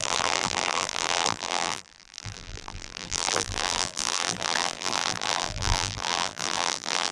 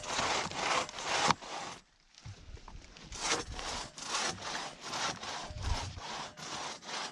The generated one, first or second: first